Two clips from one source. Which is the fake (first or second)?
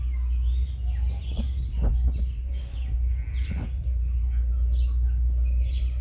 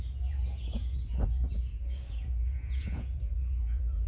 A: second